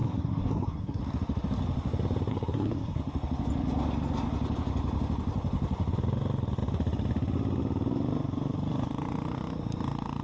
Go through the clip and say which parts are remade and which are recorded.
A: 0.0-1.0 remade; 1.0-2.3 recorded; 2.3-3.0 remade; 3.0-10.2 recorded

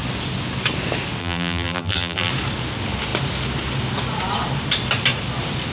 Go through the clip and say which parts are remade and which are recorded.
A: 0.0-1.2 recorded; 1.2-2.3 remade; 2.3-5.7 recorded

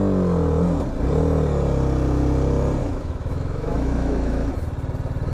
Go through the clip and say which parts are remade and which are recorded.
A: 0.0-2.8 recorded; 2.8-4.5 remade; 4.5-5.3 recorded

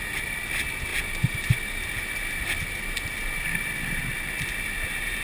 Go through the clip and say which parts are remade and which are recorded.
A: 0.0-5.2 recorded

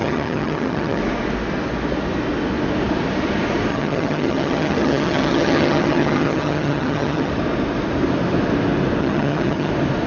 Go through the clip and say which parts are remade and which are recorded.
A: 0.0-1.0 remade; 1.0-3.7 recorded; 3.7-7.3 remade; 7.3-9.0 recorded; 9.0-9.7 remade; 9.7-10.1 recorded